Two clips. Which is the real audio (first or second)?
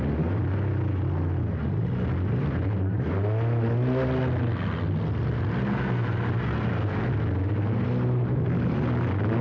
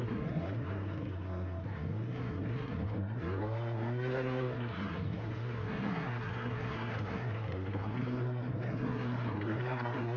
first